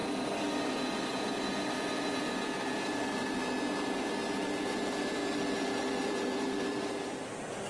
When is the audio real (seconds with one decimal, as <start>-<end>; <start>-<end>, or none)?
0.0-2.2; 3.4-4.0; 5.2-6.1